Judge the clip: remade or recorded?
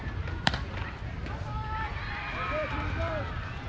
remade